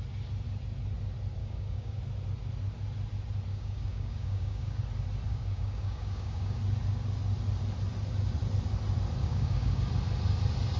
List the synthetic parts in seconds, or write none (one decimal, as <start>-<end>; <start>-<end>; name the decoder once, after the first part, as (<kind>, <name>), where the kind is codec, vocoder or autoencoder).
1.4-2.0 (codec, DAC); 3.5-4.8; 5.3-6.6; 9.2-9.8